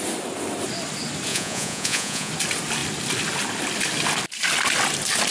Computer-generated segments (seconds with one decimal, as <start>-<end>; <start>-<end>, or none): 1.3-2.3